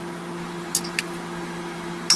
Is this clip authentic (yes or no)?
yes